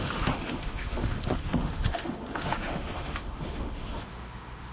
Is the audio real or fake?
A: fake